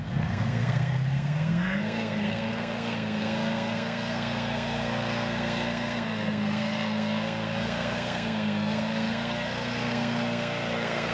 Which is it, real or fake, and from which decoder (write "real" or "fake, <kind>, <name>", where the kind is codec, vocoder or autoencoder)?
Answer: fake, codec, SNAC